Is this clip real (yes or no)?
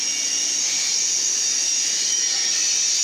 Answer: yes